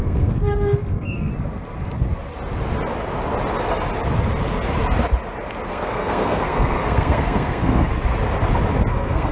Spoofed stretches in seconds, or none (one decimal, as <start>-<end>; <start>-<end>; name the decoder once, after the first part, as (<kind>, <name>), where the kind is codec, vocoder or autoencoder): 0.0-1.3 (codec, SNAC); 5.7-7.9; 8.9-9.3